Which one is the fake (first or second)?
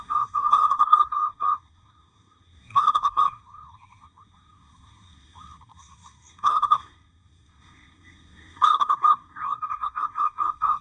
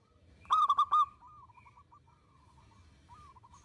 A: first